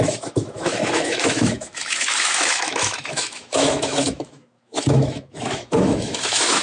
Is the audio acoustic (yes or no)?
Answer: no